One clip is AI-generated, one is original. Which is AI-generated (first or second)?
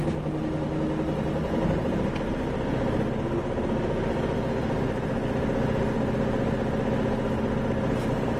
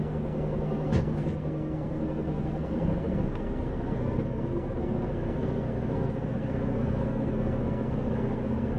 second